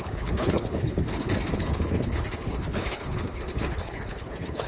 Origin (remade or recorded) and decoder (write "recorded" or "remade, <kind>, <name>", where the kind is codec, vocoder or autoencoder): remade, codec, HILCodec